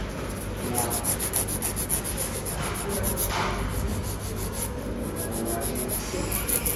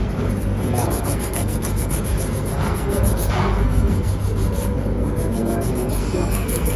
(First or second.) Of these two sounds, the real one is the first